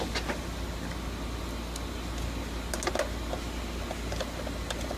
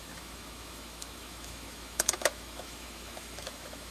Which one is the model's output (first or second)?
second